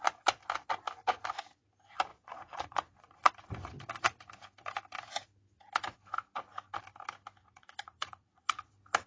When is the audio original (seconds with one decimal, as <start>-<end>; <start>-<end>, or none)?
0.0-2.1; 3.3-7.4; 8.7-9.1